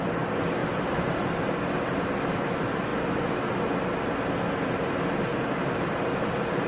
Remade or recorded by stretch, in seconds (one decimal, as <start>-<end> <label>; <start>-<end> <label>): 0.0-0.6 recorded; 0.6-1.2 remade; 1.2-5.3 recorded; 5.3-6.7 remade